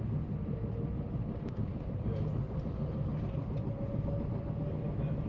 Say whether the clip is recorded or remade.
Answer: recorded